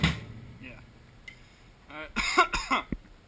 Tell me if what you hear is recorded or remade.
recorded